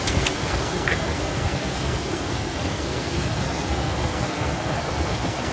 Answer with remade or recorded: remade